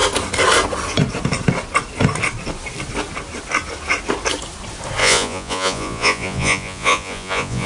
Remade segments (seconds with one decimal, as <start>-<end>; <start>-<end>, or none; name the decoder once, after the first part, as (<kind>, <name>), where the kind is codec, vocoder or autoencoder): 5.0-7.7 (vocoder, Vocos)